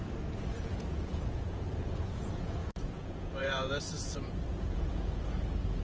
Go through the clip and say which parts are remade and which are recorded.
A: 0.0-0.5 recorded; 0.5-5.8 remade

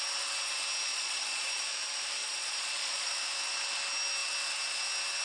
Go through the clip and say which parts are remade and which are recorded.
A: 0.0-0.9 recorded; 0.9-1.6 remade; 1.6-2.2 recorded; 2.2-3.1 remade; 3.1-5.2 recorded

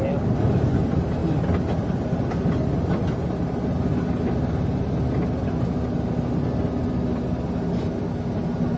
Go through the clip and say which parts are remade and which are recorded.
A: 0.0-8.8 recorded

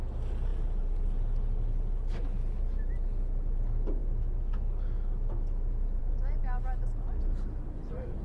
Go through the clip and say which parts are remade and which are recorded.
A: 0.0-8.2 recorded

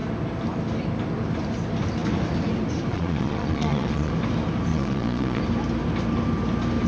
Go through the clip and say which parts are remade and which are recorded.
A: 0.0-2.9 recorded; 2.9-4.1 remade; 4.1-4.7 recorded; 4.7-5.4 remade; 5.4-6.9 recorded

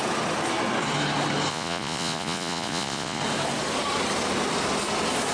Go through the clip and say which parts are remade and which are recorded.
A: 0.0-1.5 recorded; 1.5-3.2 remade; 3.2-5.3 recorded

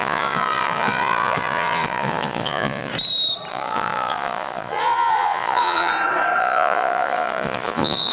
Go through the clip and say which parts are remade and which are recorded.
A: 0.0-2.9 remade; 2.9-3.5 recorded; 3.5-5.9 remade; 5.9-6.4 recorded; 6.4-8.1 remade